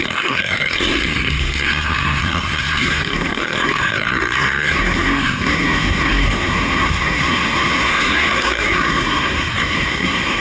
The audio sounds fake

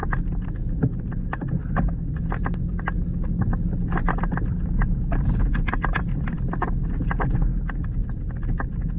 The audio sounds real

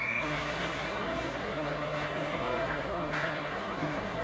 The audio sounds fake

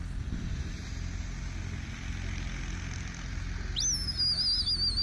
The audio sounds real